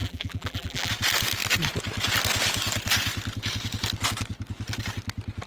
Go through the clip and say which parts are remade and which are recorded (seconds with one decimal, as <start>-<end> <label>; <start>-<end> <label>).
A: 0.0-0.9 remade; 0.9-5.5 recorded